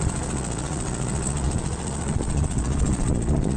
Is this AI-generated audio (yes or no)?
yes